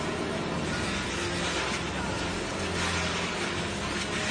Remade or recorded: recorded